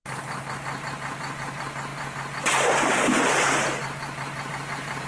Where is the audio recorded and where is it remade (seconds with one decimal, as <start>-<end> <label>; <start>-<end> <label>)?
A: 0.0-5.1 recorded